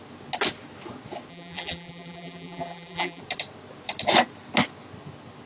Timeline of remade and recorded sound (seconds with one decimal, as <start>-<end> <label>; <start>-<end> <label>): 0.0-1.3 recorded; 1.3-3.2 remade; 3.2-5.5 recorded